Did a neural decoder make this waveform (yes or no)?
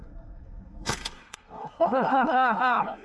yes